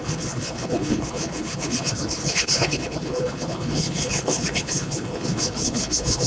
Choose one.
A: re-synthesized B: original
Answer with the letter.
A